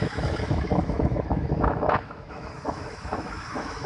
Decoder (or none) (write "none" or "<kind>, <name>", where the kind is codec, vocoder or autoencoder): autoencoder, DAC-VAE